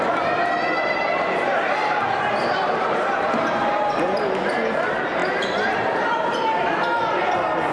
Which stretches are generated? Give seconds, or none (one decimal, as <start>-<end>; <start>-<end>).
1.8-4.0; 5.2-6.7